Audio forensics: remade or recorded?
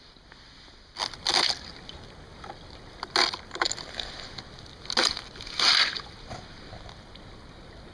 recorded